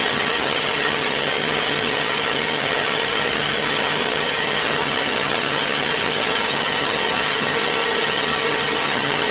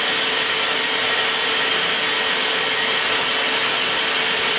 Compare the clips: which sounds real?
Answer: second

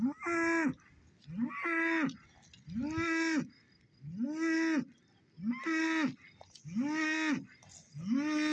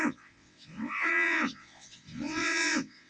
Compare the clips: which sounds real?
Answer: first